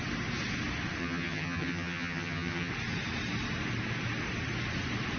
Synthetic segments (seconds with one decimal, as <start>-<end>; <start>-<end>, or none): 1.0-2.7